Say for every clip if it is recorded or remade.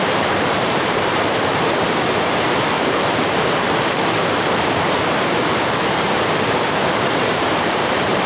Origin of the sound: remade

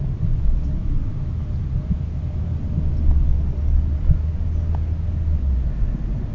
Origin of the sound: recorded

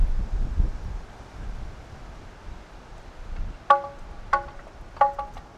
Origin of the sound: recorded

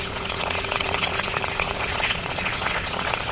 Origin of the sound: remade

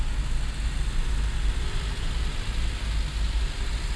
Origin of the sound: recorded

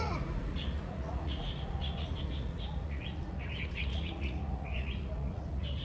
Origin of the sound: remade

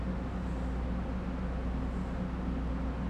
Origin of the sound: recorded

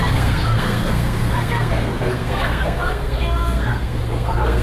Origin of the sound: remade